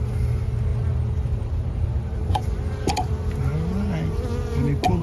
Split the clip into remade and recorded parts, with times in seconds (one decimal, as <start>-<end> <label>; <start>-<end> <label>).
0.0-3.5 remade; 3.5-5.0 recorded